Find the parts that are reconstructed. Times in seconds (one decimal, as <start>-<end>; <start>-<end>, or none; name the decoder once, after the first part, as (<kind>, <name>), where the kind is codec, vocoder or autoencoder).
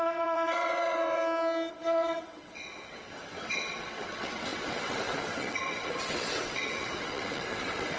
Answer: 0.0-1.2 (vocoder, WaveNeXt); 1.7-8.0